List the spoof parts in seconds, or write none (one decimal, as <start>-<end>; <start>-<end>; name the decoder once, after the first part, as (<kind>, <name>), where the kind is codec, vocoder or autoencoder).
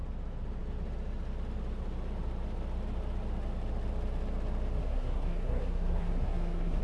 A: 4.8-6.8 (codec, SNAC)